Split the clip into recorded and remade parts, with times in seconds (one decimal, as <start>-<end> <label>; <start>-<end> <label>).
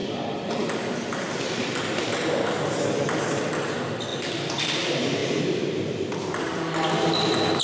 0.0-7.6 recorded